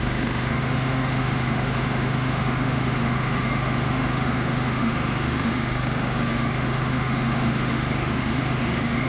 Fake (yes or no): yes